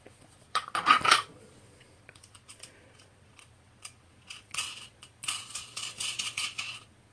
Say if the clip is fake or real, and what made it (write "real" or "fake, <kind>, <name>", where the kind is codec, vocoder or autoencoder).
fake, vocoder, Vocos